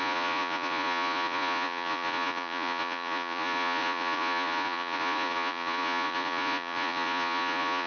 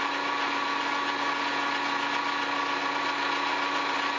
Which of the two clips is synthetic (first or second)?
first